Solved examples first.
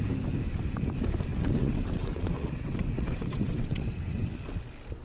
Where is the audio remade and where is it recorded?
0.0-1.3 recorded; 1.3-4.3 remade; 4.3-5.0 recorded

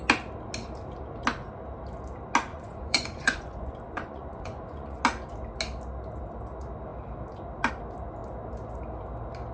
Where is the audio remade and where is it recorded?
0.0-2.5 recorded; 2.5-5.0 remade; 5.0-9.5 recorded